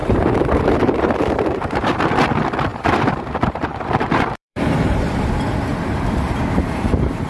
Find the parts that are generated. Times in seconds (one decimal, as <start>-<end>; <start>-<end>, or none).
0.0-1.9; 2.7-5.3; 5.7-7.3